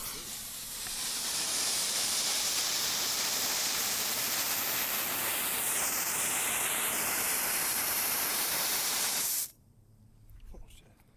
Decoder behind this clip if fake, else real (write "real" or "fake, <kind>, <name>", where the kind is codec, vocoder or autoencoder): fake, vocoder, BigVGAN v2